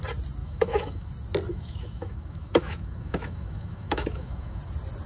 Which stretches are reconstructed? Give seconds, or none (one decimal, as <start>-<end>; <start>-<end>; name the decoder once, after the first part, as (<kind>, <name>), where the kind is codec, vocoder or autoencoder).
0.4-1.1 (autoencoder, DAC-VAE); 1.5-4.6